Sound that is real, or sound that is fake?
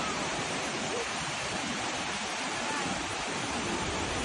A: fake